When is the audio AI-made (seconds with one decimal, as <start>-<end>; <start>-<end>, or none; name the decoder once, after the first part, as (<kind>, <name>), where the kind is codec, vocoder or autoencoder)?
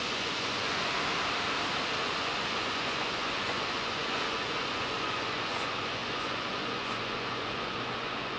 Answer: 0.0-1.1 (vocoder, Vocos); 2.0-8.4